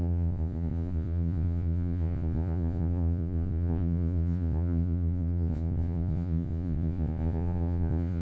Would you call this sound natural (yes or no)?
no